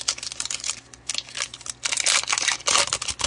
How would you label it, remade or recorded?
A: recorded